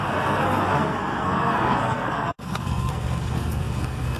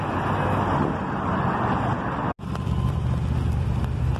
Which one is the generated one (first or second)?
first